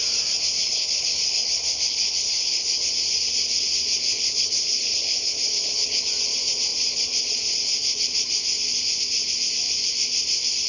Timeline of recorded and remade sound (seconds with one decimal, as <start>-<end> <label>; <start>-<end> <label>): 0.0-0.6 recorded; 0.6-2.9 remade; 2.9-4.1 recorded; 4.1-6.0 remade; 6.0-10.7 recorded